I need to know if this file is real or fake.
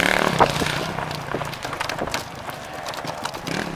real